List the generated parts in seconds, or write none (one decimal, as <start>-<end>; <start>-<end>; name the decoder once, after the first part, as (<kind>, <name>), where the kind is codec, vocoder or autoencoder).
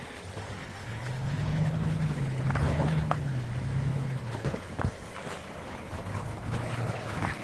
0.6-3.5 (codec, HILCodec); 3.9-4.7; 5.7-7.4